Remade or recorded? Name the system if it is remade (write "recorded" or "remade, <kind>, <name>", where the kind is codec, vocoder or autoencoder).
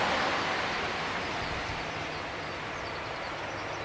recorded